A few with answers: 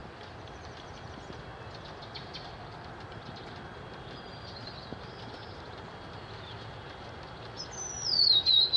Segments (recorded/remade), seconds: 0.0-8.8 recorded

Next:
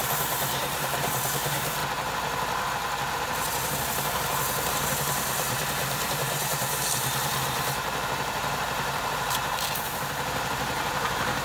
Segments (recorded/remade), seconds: 0.0-1.8 remade; 1.8-3.1 recorded; 3.1-5.6 remade; 5.6-6.1 recorded; 6.1-11.4 remade

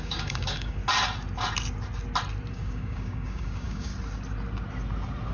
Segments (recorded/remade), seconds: 0.0-0.8 remade; 0.8-2.5 recorded; 2.5-3.9 remade; 3.9-5.3 recorded

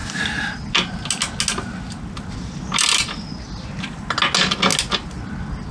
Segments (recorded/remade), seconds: 0.0-5.7 recorded

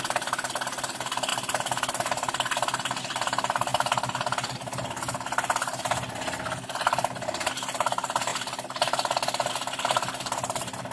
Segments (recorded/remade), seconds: 0.0-10.9 recorded

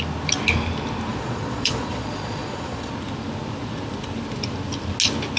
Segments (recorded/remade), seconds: 0.0-1.1 recorded; 1.1-2.9 remade; 2.9-5.4 recorded

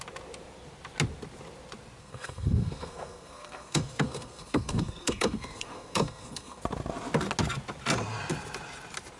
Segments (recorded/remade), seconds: 0.0-2.0 recorded; 2.0-6.6 remade; 6.6-9.2 recorded

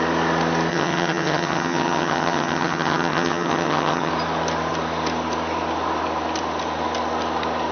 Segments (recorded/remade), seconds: 0.0-0.7 recorded; 0.7-4.1 remade; 4.1-7.7 recorded